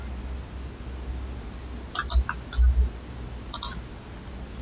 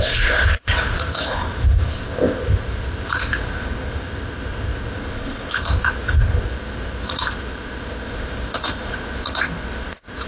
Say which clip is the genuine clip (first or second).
first